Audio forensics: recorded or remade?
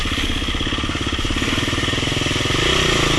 recorded